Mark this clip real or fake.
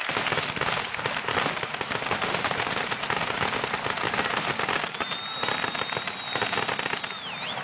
real